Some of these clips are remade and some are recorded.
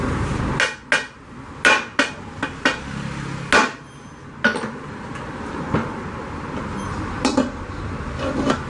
recorded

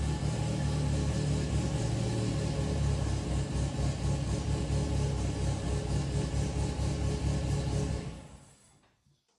recorded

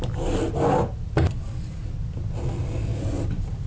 recorded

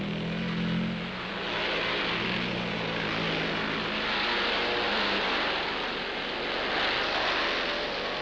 recorded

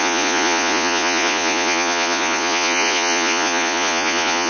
remade